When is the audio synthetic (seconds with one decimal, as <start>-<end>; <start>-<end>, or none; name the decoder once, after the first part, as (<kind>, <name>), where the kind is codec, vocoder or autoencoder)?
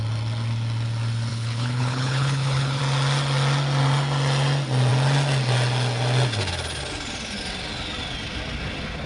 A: 1.3-2.8 (codec, HILCodec)